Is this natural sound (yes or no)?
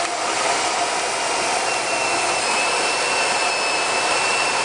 yes